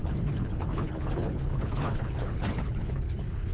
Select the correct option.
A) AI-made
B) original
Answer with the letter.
A